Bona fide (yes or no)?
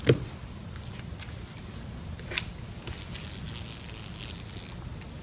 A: yes